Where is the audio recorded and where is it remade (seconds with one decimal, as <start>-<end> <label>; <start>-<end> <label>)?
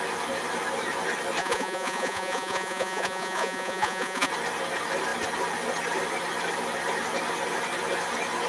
0.0-1.4 recorded; 1.4-4.3 remade; 4.3-8.5 recorded